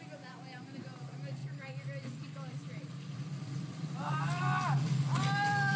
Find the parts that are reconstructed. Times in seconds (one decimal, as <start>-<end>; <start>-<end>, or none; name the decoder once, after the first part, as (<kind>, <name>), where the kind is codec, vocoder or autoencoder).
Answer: none